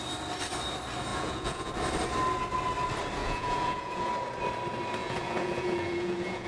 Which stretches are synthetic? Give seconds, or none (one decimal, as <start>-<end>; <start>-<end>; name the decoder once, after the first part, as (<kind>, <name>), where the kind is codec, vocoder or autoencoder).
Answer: 1.1-1.7 (vocoder, Vocos); 3.2-4.1; 5.0-6.5